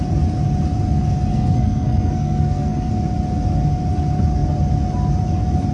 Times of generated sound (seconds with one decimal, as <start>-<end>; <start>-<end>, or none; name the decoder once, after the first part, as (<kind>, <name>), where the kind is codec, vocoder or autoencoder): 1.3-2.9 (codec, SNAC)